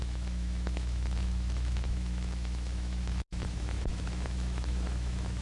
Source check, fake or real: fake